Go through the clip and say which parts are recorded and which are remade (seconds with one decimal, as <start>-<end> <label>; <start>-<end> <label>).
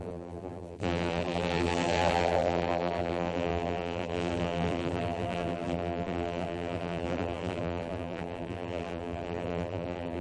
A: 0.0-10.2 remade